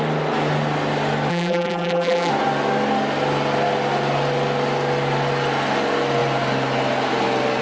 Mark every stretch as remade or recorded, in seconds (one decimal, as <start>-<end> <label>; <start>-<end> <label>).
0.0-1.3 recorded; 1.3-2.3 remade; 2.3-7.6 recorded